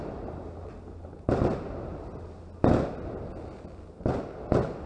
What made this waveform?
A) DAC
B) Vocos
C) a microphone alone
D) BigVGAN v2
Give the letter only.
C